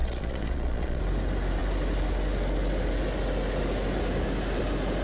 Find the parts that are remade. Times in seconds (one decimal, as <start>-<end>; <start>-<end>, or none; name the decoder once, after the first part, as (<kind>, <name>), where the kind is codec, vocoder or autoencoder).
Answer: 0.0-1.0 (vocoder, Vocos)